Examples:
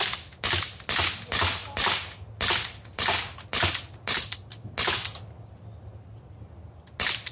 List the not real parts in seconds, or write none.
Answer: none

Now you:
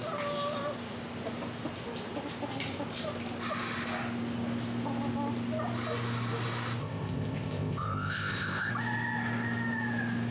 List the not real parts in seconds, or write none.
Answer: 6.8-8.7 (codec, ZipCodec)